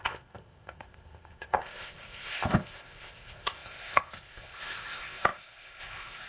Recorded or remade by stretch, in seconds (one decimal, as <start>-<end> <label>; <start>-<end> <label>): 0.0-6.3 remade